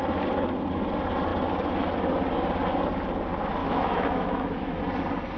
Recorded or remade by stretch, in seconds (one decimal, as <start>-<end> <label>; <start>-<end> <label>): 0.0-3.6 recorded; 3.6-4.8 remade; 4.8-5.4 recorded